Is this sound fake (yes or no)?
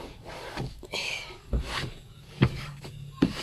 yes